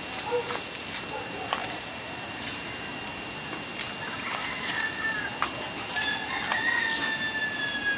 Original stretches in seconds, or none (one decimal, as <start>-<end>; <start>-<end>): 0.0-8.0